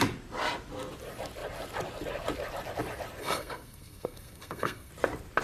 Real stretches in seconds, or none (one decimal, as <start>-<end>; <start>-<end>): 0.0-3.2; 4.9-5.4